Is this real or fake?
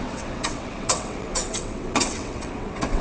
fake